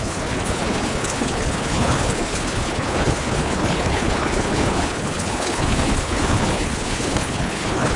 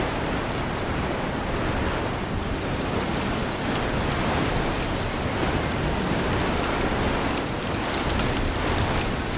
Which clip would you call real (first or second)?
second